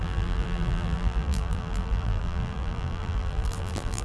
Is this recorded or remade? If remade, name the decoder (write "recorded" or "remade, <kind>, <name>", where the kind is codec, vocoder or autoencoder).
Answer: remade, vocoder, BigVGAN v2